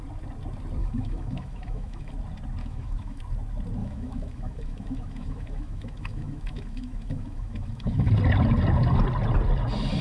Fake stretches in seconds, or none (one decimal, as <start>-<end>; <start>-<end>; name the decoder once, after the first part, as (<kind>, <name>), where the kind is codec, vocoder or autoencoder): 0.8-2.1 (autoencoder, DAC-VAE); 2.6-3.2; 3.8-8.1